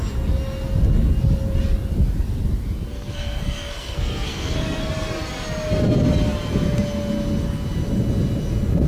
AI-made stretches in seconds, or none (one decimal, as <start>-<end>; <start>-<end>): 2.9-4.9